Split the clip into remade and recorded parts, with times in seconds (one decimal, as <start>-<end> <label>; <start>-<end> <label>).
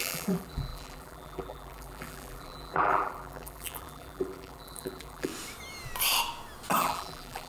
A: 0.0-5.3 remade; 5.3-6.8 recorded; 6.8-7.5 remade